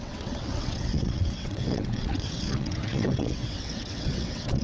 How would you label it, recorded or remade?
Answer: remade